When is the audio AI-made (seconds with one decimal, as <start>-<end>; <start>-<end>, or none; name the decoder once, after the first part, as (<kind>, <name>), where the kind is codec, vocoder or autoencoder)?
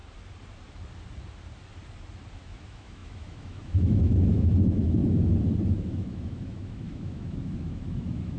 2.3-5.0 (autoencoder, DAC-VAE); 5.7-8.4